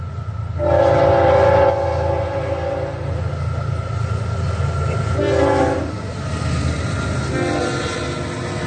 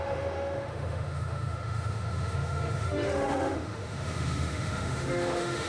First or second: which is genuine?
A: first